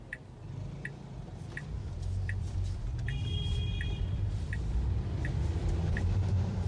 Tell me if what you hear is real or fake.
fake